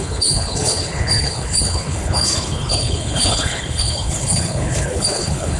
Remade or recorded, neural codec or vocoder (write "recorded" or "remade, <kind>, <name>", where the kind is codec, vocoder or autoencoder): remade, codec, HILCodec